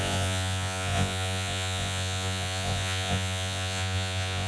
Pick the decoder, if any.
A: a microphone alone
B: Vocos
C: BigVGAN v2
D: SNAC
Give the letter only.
B